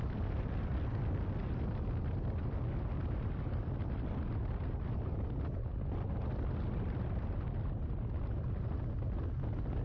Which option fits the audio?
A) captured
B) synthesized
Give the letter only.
A